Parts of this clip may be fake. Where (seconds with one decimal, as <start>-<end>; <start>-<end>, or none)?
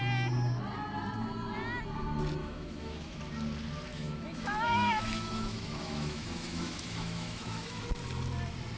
2.4-3.2; 3.9-7.8